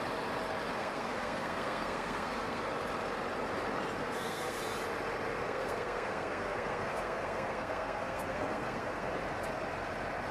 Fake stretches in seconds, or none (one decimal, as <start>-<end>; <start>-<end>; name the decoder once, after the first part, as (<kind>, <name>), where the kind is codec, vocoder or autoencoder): 0.8-2.6 (codec, SNAC); 4.0-4.6; 5.4-9.1